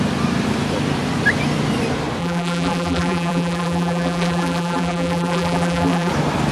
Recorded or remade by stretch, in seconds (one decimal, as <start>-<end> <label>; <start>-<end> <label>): 0.0-2.2 recorded; 2.2-6.1 remade; 6.1-6.5 recorded